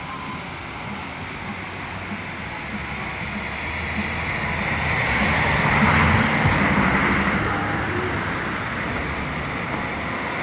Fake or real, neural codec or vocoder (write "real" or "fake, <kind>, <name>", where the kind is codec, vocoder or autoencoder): real